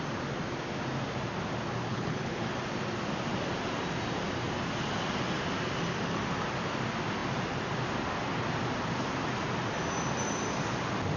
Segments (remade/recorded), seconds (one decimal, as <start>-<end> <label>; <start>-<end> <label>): 0.0-1.9 recorded; 1.9-2.4 remade; 2.4-11.2 recorded